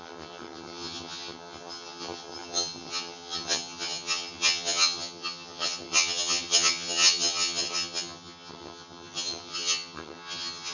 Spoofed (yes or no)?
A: yes